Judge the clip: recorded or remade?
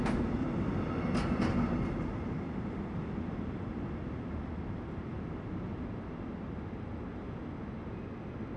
recorded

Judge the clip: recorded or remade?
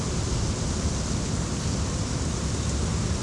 remade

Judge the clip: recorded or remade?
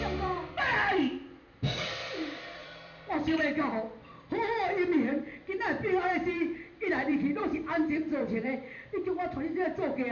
remade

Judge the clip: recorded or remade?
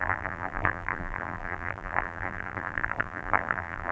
remade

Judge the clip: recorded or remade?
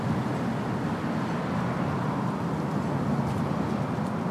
recorded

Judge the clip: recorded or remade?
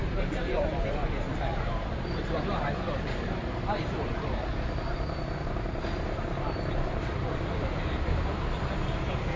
remade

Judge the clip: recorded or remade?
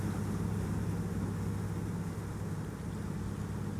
recorded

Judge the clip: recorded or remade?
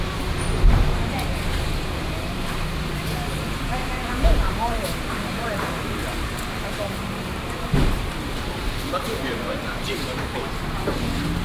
remade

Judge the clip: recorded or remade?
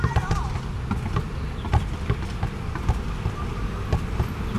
recorded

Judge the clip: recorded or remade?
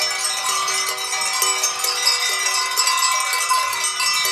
recorded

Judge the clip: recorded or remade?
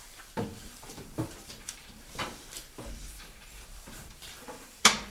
remade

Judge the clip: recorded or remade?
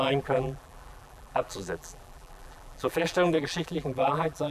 remade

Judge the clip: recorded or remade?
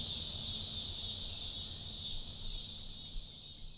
recorded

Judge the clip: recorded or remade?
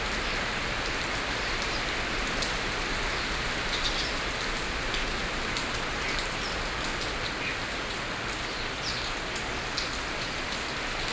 recorded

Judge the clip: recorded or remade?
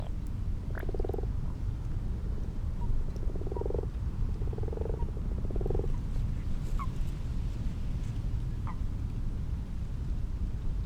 recorded